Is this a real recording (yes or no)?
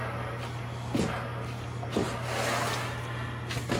yes